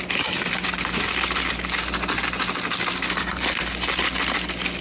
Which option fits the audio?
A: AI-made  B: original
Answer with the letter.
B